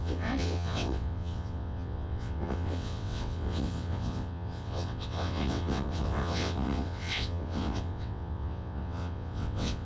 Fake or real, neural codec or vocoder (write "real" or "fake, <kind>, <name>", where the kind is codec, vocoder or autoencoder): fake, vocoder, WaveNeXt